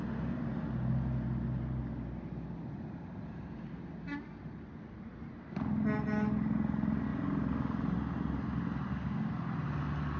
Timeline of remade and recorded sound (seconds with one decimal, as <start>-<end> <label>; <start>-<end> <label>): 0.0-0.7 remade; 0.7-10.2 recorded